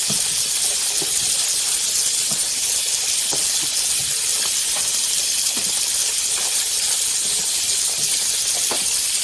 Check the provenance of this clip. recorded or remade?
recorded